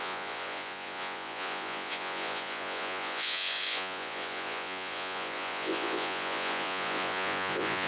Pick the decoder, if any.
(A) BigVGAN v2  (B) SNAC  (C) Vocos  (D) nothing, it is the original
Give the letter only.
C